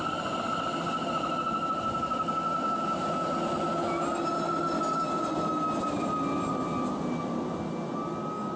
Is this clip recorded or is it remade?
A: recorded